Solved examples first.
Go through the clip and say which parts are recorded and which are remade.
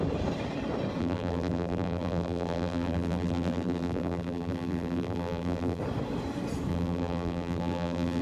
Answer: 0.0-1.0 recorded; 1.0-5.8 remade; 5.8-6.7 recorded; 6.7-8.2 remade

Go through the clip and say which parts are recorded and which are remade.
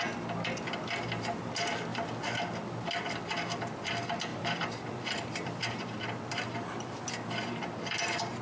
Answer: 0.0-1.9 recorded; 1.9-3.2 remade; 3.2-4.3 recorded; 4.3-7.0 remade; 7.0-8.4 recorded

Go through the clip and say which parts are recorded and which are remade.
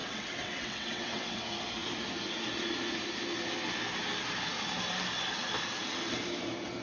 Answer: 0.0-1.4 remade; 1.4-6.8 recorded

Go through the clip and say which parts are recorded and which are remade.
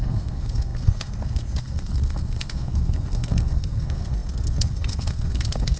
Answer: 0.0-5.8 remade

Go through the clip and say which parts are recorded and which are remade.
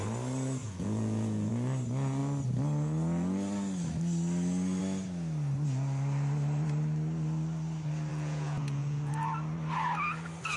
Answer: 0.0-0.6 recorded; 0.6-1.5 remade; 1.5-8.1 recorded; 8.1-9.1 remade; 9.1-10.6 recorded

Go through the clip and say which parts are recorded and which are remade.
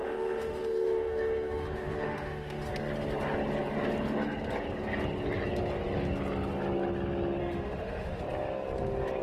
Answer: 0.0-2.7 remade; 2.7-7.4 recorded; 7.4-8.2 remade; 8.2-9.2 recorded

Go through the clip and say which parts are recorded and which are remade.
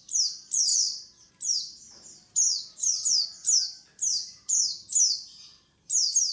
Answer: 0.0-0.7 recorded; 0.7-1.3 remade; 1.3-6.3 recorded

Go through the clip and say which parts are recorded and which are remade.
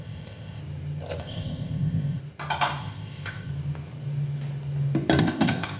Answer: 0.0-0.6 remade; 0.6-1.2 recorded; 1.2-2.2 remade; 2.2-2.8 recorded; 2.8-3.5 remade; 3.5-5.2 recorded; 5.2-5.8 remade